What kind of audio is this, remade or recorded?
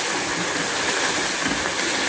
recorded